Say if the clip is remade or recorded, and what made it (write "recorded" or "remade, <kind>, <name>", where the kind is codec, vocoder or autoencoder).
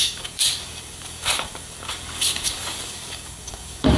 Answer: remade, codec, DAC